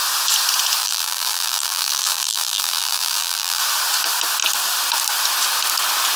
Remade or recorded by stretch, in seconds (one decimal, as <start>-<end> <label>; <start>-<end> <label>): 0.0-0.8 recorded; 0.8-3.6 remade; 3.6-6.2 recorded